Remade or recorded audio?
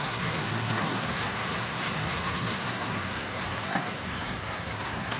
remade